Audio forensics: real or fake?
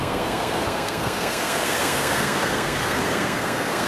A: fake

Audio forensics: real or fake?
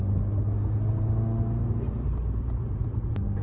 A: real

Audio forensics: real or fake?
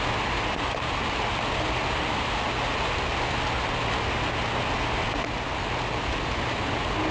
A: real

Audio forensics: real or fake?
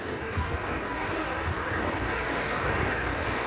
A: fake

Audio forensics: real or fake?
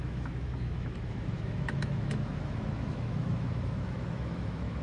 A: fake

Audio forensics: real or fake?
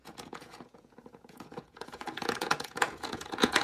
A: fake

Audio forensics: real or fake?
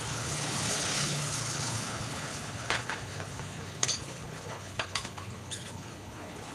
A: fake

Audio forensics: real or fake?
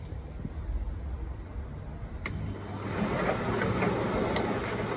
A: real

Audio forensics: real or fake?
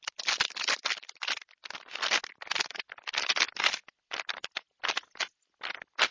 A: real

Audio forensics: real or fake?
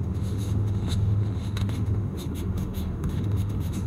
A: fake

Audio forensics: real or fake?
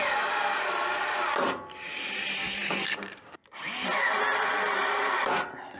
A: fake